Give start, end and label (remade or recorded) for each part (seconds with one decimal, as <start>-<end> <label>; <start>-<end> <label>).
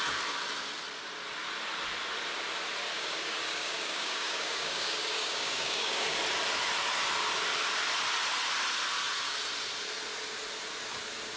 0.0-2.9 recorded; 2.9-6.2 remade; 6.2-11.4 recorded